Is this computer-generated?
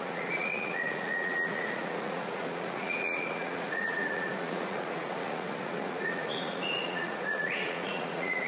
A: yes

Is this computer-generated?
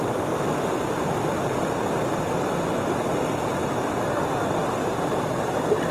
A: no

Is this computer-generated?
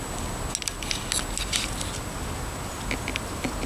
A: no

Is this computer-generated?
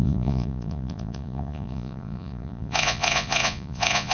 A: yes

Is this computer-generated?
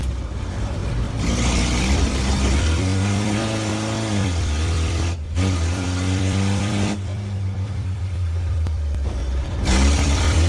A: yes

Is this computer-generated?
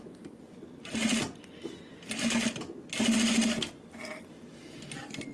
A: no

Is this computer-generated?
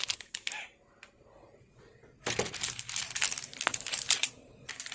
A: yes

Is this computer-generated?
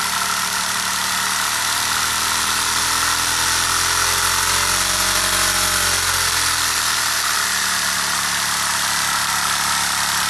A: no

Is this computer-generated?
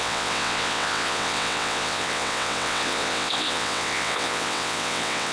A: yes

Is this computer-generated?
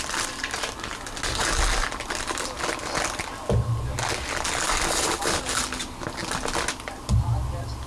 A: no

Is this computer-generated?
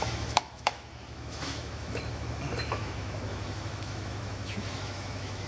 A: yes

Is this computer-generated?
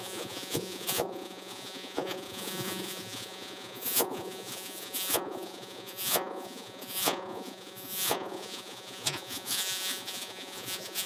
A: yes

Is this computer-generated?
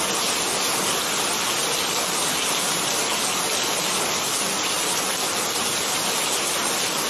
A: no